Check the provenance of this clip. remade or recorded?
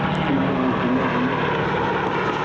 recorded